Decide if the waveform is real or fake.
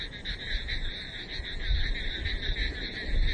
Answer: real